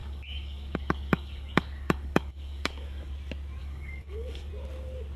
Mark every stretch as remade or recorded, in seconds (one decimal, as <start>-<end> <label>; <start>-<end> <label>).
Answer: 0.0-3.1 remade; 3.1-3.6 recorded; 3.6-4.5 remade; 4.5-5.2 recorded